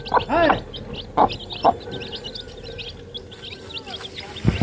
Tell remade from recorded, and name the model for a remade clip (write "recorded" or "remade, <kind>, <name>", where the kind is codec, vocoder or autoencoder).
recorded